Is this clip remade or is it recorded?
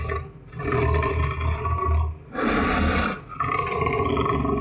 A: recorded